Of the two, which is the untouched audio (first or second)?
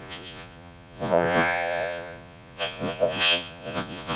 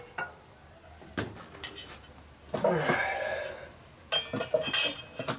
second